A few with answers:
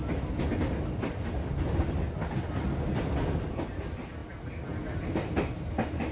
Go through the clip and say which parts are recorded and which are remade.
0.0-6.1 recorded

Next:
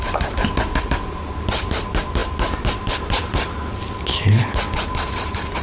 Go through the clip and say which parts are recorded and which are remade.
0.0-4.1 recorded; 4.1-4.6 remade; 4.6-5.6 recorded

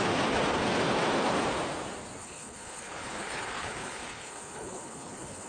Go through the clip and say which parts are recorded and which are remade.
0.0-2.2 recorded; 2.2-5.5 remade

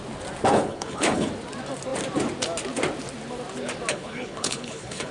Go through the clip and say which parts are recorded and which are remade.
0.0-0.5 recorded; 0.5-1.3 remade; 1.3-3.9 recorded; 3.9-5.1 remade

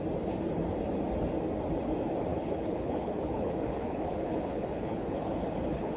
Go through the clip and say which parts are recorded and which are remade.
0.0-2.3 recorded; 2.3-6.0 remade